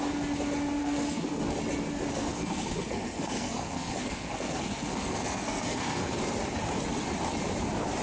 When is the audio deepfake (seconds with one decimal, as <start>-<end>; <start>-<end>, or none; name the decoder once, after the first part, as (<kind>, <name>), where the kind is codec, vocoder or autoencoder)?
0.8-1.4 (codec, SNAC); 2.1-6.2